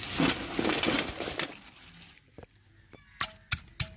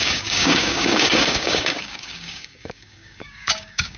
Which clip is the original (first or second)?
first